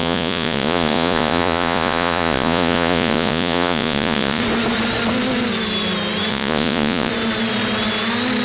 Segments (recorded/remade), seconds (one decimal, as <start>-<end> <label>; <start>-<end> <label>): 0.0-4.4 remade; 4.4-6.3 recorded; 6.3-7.1 remade; 7.1-8.4 recorded